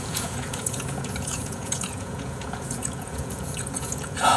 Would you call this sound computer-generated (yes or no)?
yes